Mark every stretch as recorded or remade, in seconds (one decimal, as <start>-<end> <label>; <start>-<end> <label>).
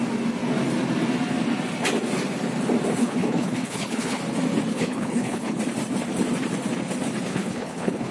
0.0-3.0 recorded; 3.0-4.2 remade; 4.2-4.7 recorded; 4.7-5.6 remade; 5.6-7.3 recorded; 7.3-8.1 remade